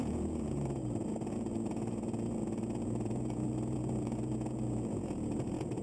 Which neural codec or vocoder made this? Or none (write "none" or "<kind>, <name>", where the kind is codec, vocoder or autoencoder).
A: vocoder, Vocos